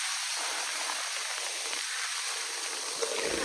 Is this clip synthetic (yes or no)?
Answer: no